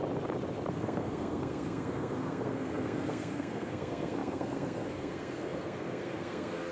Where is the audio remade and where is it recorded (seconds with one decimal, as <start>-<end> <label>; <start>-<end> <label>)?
0.0-0.7 recorded; 0.7-6.7 remade